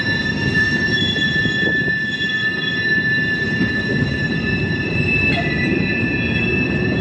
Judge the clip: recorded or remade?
remade